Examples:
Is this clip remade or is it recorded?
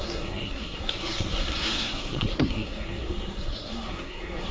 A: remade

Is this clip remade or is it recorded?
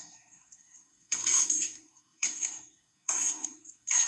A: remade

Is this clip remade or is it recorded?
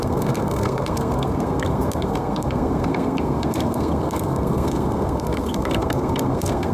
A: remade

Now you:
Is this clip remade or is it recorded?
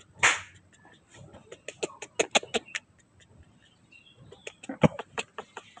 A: recorded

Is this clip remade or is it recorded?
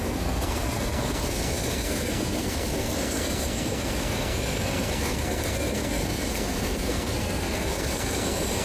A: remade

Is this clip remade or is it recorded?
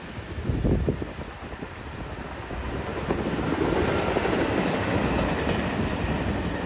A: recorded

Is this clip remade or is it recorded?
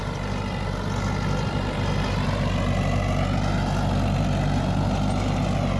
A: recorded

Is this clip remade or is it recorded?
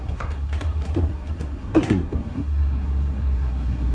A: remade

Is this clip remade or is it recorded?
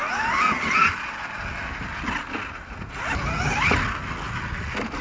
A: recorded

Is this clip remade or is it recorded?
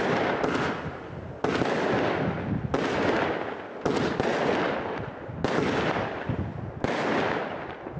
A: recorded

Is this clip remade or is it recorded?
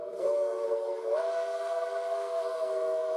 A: remade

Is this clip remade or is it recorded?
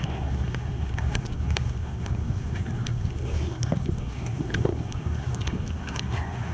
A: remade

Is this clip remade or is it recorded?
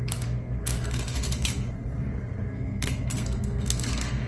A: remade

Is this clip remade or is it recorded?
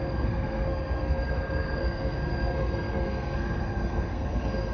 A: remade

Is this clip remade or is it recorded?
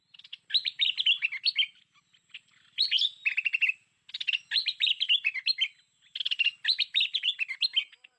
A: recorded